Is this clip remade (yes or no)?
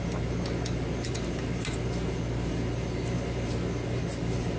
no